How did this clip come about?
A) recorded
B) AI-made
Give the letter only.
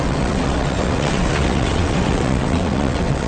B